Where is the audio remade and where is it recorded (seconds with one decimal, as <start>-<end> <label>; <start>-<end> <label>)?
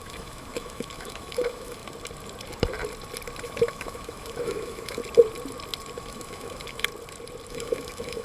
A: 0.0-1.8 remade; 1.8-3.4 recorded; 3.4-5.0 remade; 5.0-6.0 recorded; 6.0-6.9 remade; 6.9-7.5 recorded; 7.5-8.2 remade